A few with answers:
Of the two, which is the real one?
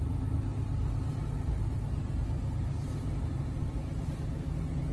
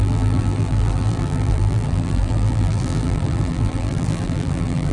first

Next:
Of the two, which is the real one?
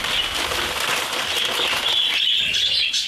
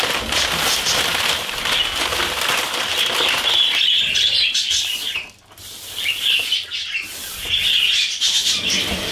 first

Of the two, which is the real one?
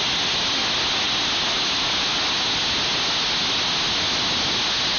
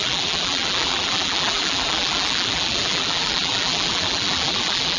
first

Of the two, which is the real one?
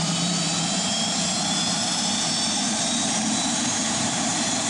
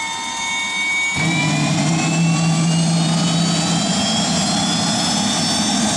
second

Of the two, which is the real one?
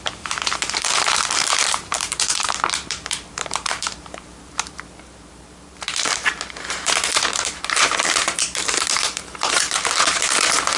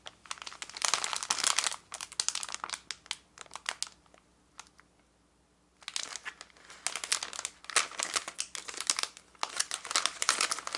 second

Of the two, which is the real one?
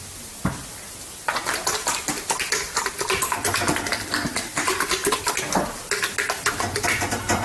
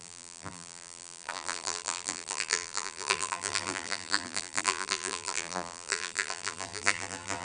first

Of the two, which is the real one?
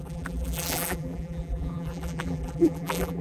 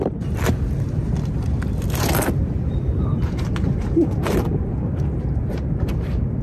second